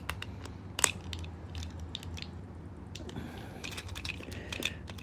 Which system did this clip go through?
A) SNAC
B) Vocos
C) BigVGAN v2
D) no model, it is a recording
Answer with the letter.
D